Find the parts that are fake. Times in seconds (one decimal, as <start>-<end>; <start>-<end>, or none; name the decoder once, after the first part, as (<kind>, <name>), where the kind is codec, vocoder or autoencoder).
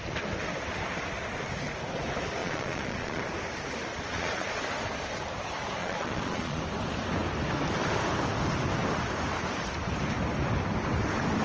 2.4-3.2 (vocoder, Vocos); 3.9-4.6; 5.8-6.6